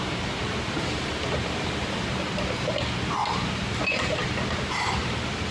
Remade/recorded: remade